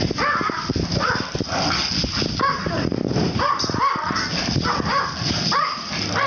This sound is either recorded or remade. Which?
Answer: recorded